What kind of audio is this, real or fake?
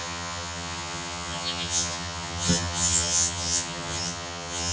fake